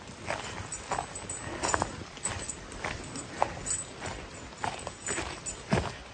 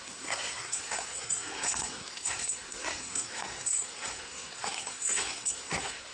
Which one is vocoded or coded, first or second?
second